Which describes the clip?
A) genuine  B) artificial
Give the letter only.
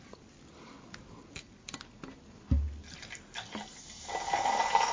A